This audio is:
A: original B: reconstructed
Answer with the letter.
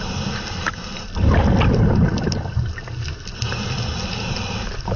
A